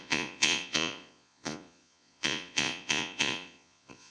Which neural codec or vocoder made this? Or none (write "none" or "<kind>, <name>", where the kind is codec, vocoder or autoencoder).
vocoder, Vocos